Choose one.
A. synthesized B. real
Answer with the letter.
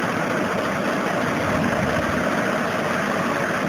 B